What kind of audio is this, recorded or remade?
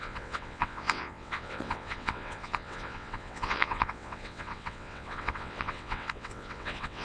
remade